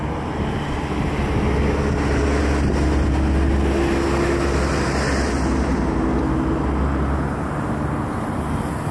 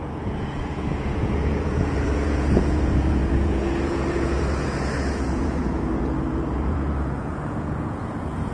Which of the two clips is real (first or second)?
first